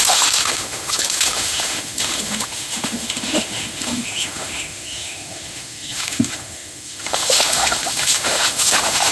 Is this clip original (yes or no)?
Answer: no